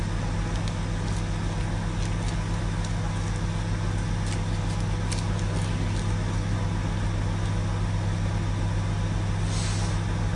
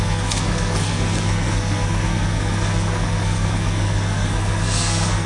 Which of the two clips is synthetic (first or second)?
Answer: second